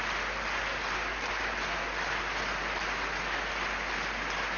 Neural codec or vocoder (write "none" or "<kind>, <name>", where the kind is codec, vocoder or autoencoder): none